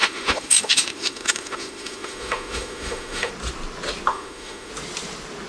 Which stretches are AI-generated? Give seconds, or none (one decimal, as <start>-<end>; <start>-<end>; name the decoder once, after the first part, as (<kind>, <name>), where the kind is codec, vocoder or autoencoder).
0.0-3.3 (autoencoder, DAC-VAE); 4.1-4.7

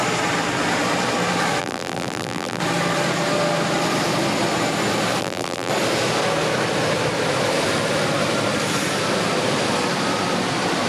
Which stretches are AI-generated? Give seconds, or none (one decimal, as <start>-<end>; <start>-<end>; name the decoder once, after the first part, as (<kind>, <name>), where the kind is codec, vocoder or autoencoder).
1.6-2.6 (vocoder, BigVGAN v2); 5.2-5.7

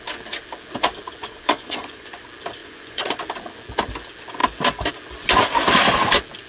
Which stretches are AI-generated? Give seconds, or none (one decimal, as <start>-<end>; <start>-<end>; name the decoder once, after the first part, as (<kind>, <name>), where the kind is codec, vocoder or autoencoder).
1.2-2.2 (vocoder, Vocos); 2.6-3.2

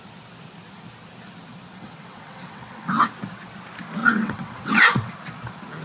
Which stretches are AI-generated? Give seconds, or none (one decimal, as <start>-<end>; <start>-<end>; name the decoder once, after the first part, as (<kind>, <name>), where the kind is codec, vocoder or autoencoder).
1.7-3.1 (vocoder, WaveNeXt); 4.0-5.1

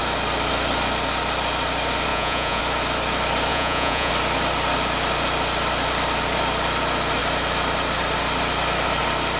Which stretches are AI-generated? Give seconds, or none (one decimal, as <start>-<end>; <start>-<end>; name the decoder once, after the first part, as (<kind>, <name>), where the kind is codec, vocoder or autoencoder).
2.1-2.6 (vocoder, Vocos); 3.5-4.1

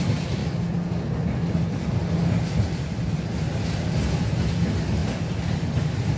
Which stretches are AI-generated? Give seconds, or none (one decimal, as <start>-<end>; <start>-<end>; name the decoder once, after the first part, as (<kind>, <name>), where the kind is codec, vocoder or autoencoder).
0.0-0.4 (vocoder, BigVGAN v2); 1.6-2.0; 4.2-6.2

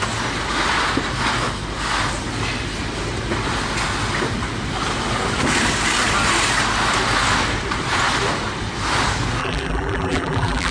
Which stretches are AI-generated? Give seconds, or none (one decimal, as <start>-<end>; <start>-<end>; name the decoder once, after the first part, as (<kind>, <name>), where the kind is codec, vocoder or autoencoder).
9.4-10.7 (vocoder, BigVGAN v2)